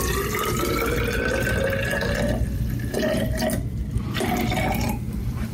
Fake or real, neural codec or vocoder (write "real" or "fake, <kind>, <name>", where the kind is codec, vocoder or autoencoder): real